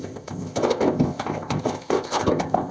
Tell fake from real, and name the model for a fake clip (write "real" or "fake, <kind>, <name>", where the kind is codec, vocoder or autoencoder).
fake, codec, ZipCodec